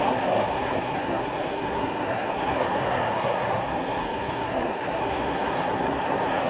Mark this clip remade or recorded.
remade